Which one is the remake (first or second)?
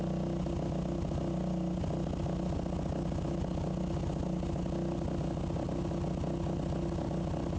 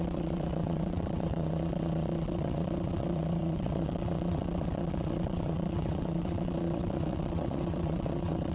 second